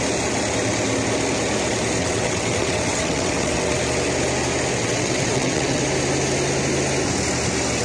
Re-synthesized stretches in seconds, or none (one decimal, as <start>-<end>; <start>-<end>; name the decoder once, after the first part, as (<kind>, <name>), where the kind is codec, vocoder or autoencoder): 2.0-3.8 (vocoder, WaveNeXt); 4.8-5.8